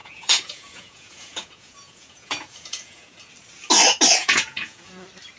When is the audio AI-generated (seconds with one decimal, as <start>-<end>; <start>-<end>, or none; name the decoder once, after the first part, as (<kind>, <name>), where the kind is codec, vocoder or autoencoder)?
0.0-3.2 (vocoder, Vocos); 4.2-4.9